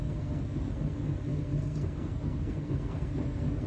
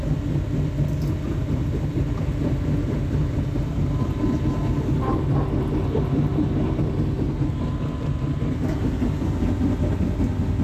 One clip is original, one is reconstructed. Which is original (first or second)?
second